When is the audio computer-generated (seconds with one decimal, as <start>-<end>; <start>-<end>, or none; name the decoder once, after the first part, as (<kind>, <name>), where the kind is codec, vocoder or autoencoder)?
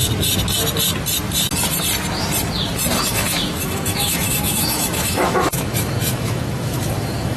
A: 3.1-7.4 (autoencoder, DAC-VAE)